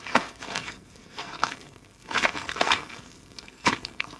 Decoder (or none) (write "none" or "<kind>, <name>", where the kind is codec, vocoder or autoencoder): codec, SNAC